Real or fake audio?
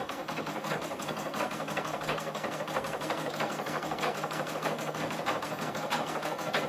fake